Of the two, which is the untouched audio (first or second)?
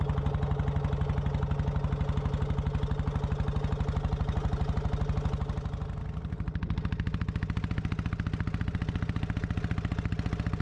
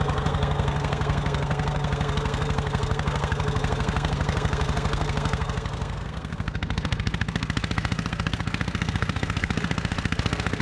first